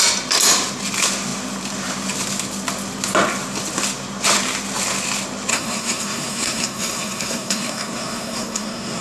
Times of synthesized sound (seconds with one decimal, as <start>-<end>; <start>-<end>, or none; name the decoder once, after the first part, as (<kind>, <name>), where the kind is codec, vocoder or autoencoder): 5.5-9.0 (codec, SNAC)